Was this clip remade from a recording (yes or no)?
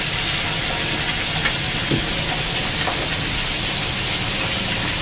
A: no